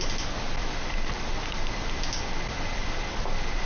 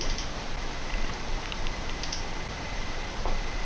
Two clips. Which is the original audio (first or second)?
first